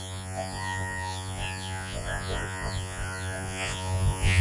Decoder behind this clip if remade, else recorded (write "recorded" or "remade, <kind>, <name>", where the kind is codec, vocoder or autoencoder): remade, vocoder, Vocos